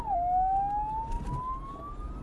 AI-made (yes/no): no